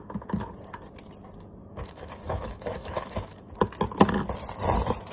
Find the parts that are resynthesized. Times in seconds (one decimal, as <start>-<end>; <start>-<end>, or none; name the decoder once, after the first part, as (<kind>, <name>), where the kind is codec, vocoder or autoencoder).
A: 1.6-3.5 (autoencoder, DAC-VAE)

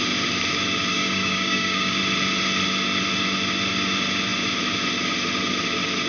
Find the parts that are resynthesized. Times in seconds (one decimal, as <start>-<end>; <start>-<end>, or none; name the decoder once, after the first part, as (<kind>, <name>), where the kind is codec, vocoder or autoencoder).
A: 0.9-2.0 (codec, DAC)

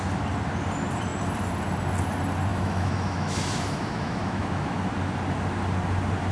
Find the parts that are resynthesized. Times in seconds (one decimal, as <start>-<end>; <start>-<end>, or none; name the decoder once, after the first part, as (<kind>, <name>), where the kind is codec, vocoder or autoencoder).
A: 2.5-4.9 (autoencoder, DAC-VAE)